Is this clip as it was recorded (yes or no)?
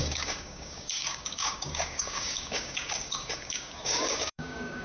no